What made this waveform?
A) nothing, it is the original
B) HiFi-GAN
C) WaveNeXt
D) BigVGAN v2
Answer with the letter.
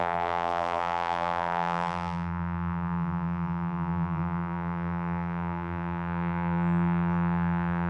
D